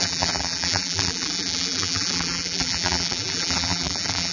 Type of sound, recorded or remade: remade